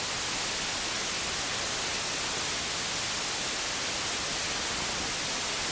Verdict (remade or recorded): recorded